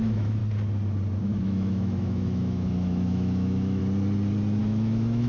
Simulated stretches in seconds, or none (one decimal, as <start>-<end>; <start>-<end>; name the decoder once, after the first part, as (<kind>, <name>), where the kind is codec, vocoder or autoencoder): 0.0-0.4 (autoencoder, DAC-VAE); 1.2-3.8; 4.6-5.3

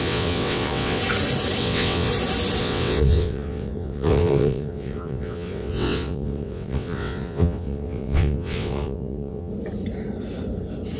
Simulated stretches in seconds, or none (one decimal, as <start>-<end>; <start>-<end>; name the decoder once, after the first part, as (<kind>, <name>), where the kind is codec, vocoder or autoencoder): 0.0-1.0 (vocoder, WaveNeXt); 1.6-2.1; 2.6-9.5

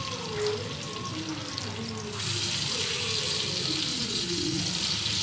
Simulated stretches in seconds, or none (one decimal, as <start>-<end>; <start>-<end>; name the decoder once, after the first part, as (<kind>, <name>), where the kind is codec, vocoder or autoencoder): 3.9-4.6 (vocoder, Vocos)

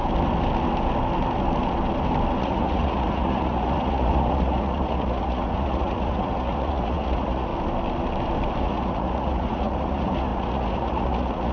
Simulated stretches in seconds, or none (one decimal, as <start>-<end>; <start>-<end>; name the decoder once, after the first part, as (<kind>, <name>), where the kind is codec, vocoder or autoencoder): 2.4-7.5 (vocoder, Vocos); 8.6-11.5

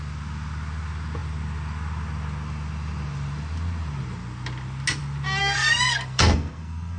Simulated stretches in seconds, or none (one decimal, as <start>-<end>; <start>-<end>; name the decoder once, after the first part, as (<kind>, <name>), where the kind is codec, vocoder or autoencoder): 5.4-7.0 (codec, SNAC)

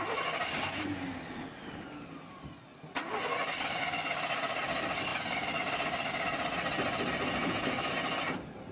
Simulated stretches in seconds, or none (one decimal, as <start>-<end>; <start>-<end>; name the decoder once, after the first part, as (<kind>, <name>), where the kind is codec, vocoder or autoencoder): 7.4-7.9 (autoencoder, DAC-VAE)

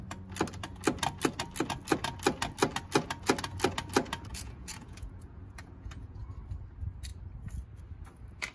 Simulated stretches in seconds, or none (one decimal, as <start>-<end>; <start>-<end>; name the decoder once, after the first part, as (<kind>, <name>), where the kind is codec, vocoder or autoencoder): 4.3-6.2 (vocoder, Vocos)

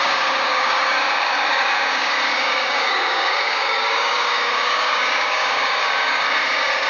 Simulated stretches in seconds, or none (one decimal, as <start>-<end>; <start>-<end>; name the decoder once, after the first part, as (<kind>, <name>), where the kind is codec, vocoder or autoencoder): 0.0-6.9 (codec, DAC)